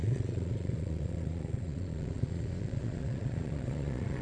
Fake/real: fake